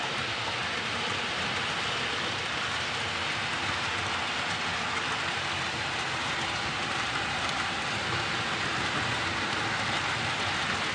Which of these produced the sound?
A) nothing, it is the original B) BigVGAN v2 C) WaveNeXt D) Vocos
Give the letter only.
A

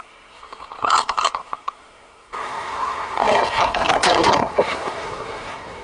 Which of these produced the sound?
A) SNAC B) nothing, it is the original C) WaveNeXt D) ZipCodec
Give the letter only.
A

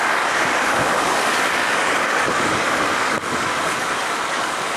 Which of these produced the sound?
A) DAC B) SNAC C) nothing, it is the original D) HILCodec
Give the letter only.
A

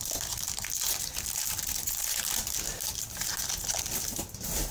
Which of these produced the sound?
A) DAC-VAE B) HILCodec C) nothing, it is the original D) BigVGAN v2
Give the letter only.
C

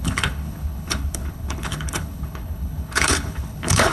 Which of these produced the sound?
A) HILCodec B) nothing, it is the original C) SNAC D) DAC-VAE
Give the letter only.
A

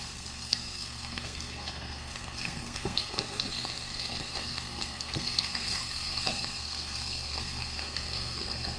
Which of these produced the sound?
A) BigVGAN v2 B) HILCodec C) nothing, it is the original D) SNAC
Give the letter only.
D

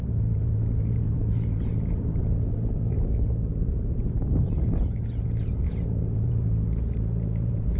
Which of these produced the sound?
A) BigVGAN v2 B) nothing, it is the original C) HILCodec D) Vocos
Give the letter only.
A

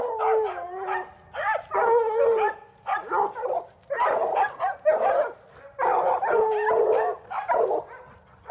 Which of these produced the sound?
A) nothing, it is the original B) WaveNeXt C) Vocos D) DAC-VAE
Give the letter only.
A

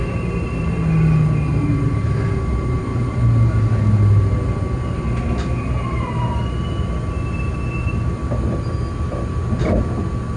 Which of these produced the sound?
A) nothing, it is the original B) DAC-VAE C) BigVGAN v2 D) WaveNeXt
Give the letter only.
A